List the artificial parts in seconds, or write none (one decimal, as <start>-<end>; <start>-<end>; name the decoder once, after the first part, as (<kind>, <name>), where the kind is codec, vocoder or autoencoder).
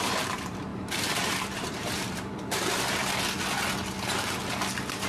0.0-3.1 (vocoder, BigVGAN v2)